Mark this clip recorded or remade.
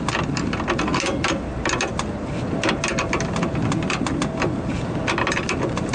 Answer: recorded